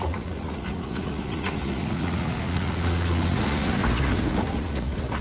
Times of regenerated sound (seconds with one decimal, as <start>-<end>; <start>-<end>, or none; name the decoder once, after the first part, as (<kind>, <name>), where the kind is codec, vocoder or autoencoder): 0.0-5.2 (vocoder, Vocos)